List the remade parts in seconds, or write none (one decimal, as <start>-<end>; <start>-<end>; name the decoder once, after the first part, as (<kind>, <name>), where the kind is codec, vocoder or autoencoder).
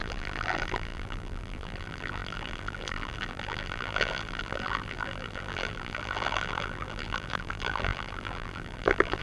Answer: 0.0-9.2 (vocoder, BigVGAN v2)